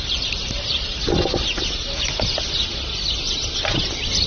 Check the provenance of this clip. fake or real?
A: real